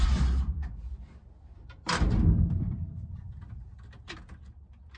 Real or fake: fake